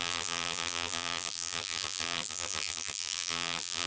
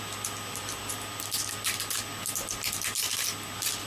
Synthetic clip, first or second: first